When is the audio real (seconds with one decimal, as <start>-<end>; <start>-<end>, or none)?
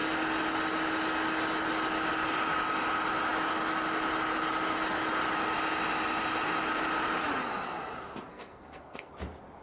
0.0-8.3; 9.1-9.6